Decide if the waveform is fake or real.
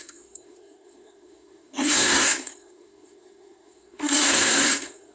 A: fake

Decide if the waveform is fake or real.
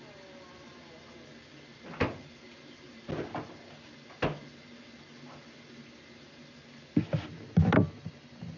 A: real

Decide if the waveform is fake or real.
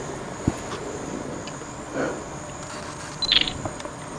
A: real